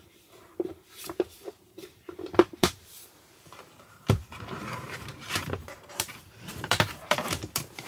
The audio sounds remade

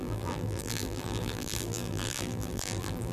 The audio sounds remade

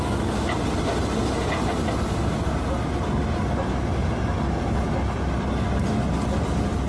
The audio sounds recorded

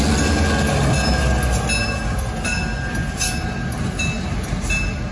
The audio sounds recorded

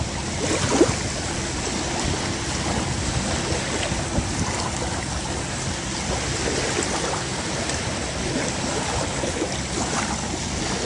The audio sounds recorded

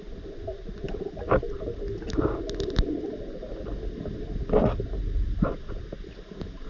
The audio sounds recorded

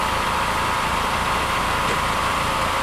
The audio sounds remade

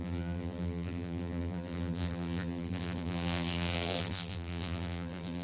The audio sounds remade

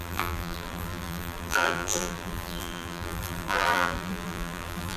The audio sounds remade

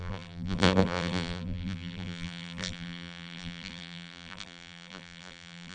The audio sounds remade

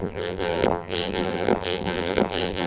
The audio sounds remade